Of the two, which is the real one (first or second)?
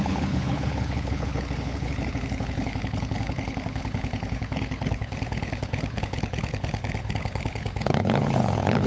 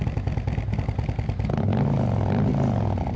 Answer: second